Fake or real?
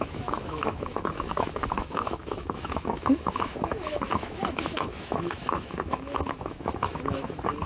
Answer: fake